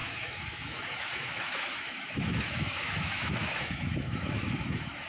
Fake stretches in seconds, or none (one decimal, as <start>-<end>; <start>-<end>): 0.0-5.1